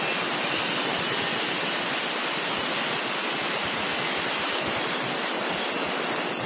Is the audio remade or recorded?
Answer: recorded